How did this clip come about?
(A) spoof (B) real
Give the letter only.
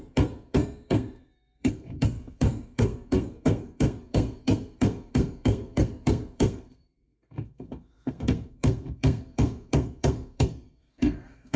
A